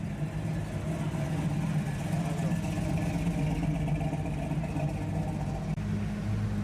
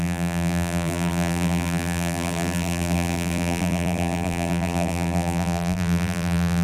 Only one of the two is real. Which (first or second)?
first